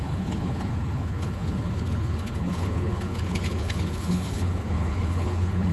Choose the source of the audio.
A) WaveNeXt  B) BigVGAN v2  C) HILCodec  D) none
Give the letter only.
C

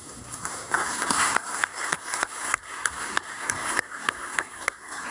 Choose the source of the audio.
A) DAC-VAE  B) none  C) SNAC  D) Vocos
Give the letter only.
C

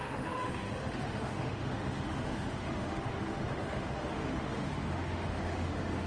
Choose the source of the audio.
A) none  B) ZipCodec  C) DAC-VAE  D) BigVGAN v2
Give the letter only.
C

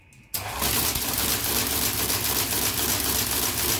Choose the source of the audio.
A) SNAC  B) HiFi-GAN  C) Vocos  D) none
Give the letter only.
D